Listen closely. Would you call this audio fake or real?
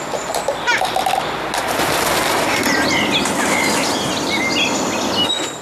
real